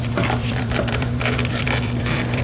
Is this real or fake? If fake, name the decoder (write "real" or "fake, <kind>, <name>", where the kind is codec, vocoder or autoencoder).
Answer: fake, vocoder, BigVGAN v2